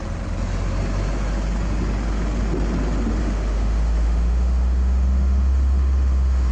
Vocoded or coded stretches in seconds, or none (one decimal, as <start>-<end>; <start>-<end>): 3.2-6.5